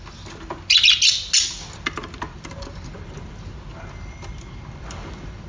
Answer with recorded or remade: recorded